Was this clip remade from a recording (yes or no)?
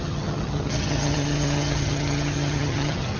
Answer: yes